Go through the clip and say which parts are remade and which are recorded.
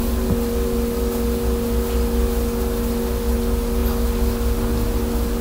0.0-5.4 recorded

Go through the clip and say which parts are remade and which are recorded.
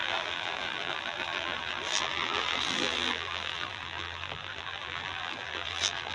0.0-6.1 remade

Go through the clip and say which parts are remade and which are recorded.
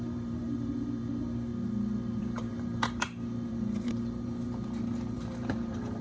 0.0-1.5 remade; 1.5-2.2 recorded; 2.2-6.0 remade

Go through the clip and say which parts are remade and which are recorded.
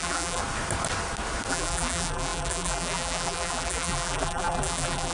0.0-0.4 remade; 0.4-1.5 recorded; 1.5-5.1 remade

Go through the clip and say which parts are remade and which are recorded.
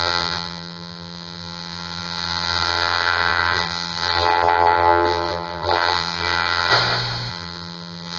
0.0-6.7 remade; 6.7-7.3 recorded; 7.3-8.2 remade